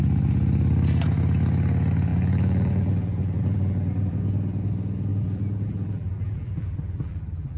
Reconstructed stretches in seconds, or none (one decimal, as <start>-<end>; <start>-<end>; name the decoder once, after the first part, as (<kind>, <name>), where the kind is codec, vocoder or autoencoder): 2.1-4.1 (vocoder, BigVGAN v2); 5.1-7.6